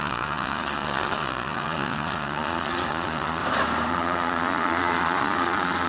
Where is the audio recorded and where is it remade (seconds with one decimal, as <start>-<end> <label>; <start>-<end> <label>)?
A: 0.0-3.4 remade; 3.4-3.9 recorded; 3.9-5.9 remade